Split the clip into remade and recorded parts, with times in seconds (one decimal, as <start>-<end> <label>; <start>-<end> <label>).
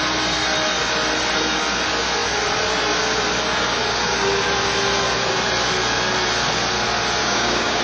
0.0-7.2 recorded; 7.2-7.8 remade